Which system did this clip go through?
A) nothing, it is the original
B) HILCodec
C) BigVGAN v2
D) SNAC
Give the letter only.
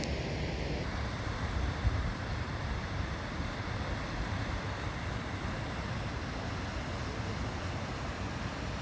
A